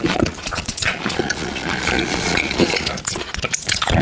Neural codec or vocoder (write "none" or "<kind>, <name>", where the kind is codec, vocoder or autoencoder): vocoder, Vocos